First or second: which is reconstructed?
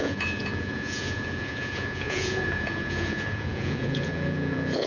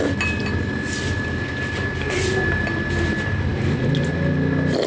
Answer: first